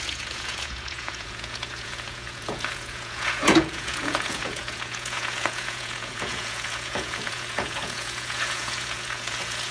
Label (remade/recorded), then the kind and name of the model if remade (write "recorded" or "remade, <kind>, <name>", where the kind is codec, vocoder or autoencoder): remade, vocoder, Vocos